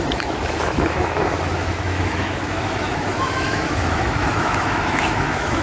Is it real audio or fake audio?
fake